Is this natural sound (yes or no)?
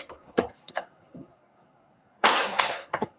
no